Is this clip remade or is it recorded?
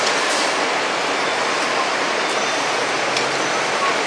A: recorded